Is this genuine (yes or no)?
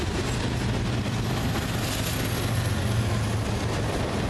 yes